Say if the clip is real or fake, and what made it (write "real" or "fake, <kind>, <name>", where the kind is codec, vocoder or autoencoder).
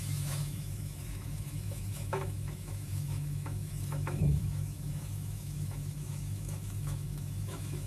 fake, autoencoder, DAC-VAE